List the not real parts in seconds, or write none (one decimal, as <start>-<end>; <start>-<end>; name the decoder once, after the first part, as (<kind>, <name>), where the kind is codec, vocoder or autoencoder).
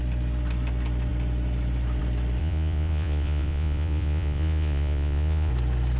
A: 2.4-5.5 (vocoder, Vocos)